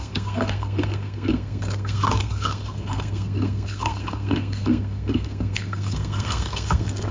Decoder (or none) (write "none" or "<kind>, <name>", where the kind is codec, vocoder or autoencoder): codec, SNAC